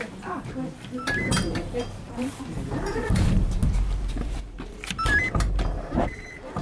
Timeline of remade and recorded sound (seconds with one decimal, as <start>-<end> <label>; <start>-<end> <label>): 0.0-3.6 remade; 3.6-4.1 recorded; 4.1-6.6 remade